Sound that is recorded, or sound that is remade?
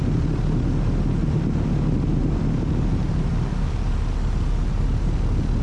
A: recorded